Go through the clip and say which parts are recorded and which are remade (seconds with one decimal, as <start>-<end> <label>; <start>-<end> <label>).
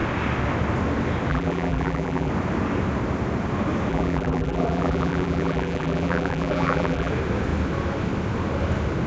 0.0-1.3 recorded; 1.3-2.3 remade; 2.3-3.9 recorded; 3.9-7.1 remade; 7.1-9.1 recorded